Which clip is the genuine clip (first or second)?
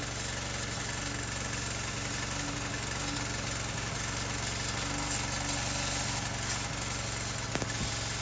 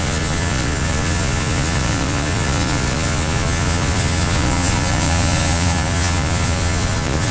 first